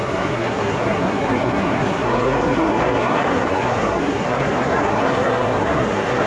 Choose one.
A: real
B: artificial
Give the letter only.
B